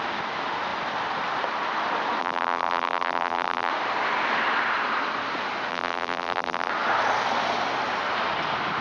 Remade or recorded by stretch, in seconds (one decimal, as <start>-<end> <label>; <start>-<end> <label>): 0.0-2.2 recorded; 2.2-3.7 remade; 3.7-5.7 recorded; 5.7-6.7 remade; 6.7-8.8 recorded